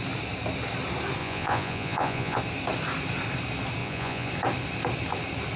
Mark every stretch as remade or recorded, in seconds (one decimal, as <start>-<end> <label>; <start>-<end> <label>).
0.0-1.2 recorded; 1.2-2.4 remade; 2.4-3.8 recorded; 3.8-4.3 remade; 4.3-5.6 recorded